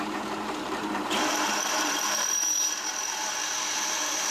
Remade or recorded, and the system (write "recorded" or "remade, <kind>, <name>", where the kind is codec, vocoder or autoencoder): remade, vocoder, BigVGAN v2